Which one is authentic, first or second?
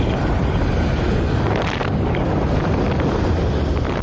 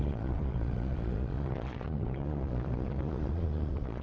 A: first